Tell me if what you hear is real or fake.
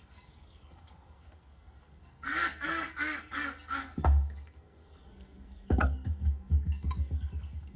fake